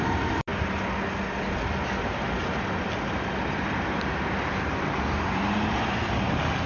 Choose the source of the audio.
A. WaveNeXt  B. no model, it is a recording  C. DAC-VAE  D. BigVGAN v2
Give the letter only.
B